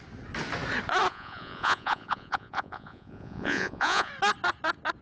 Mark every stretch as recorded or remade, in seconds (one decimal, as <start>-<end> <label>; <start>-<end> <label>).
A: 0.0-1.1 recorded; 1.1-4.1 remade; 4.1-5.0 recorded